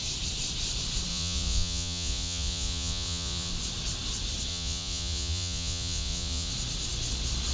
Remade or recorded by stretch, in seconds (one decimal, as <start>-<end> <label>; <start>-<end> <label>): 0.0-1.1 recorded; 1.1-3.5 remade; 3.5-4.5 recorded; 4.5-6.5 remade; 6.5-7.5 recorded